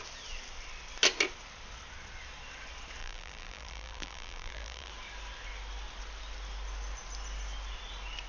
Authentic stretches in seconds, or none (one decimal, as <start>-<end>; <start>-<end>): 0.0-3.0; 4.9-8.3